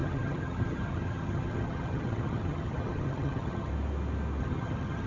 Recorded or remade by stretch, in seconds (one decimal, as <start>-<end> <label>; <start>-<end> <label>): 0.0-3.7 remade; 3.7-4.4 recorded; 4.4-5.1 remade